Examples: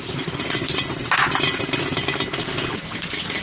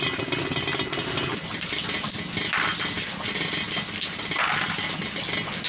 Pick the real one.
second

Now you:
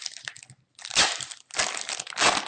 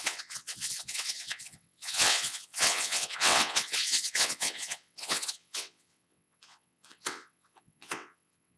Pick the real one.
first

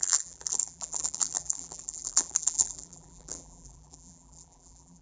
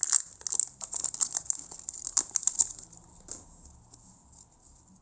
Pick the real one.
second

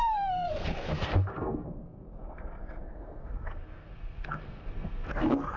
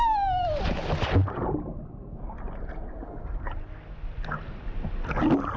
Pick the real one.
second